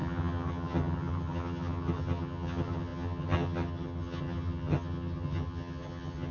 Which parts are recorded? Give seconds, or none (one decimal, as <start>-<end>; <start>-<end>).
none